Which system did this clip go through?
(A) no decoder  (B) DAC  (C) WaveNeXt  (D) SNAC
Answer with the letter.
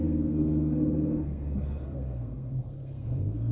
D